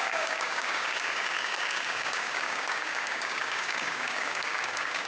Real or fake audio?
fake